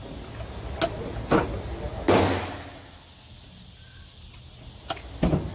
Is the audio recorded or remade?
recorded